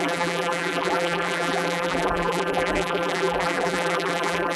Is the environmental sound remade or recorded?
remade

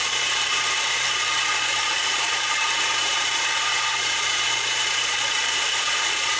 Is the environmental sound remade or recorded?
remade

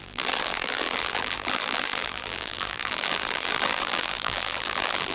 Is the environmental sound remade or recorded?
remade